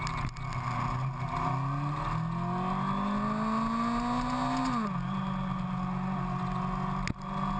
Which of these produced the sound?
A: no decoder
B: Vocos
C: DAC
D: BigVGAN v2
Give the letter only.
A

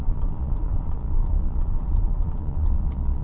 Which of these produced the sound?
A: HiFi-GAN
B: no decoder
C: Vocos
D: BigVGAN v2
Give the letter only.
C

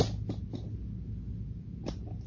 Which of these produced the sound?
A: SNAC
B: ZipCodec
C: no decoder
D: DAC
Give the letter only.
C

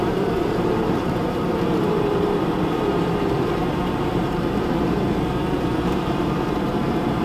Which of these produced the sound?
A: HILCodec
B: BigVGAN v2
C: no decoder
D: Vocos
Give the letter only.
B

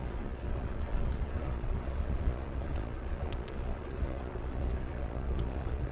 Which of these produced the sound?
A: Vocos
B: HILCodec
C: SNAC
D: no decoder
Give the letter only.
A